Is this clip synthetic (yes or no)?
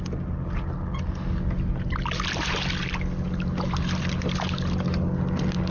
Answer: no